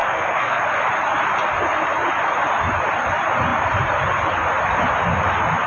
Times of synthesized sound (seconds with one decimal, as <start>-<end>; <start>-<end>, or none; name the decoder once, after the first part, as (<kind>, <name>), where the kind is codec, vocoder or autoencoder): 0.0-0.6 (codec, SNAC)